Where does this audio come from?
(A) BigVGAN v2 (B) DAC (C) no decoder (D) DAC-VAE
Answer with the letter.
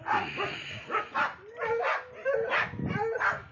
C